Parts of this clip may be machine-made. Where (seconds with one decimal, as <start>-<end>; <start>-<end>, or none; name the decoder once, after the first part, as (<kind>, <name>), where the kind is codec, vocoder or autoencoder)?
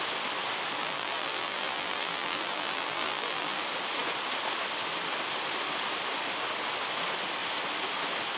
0.8-3.6 (vocoder, BigVGAN v2)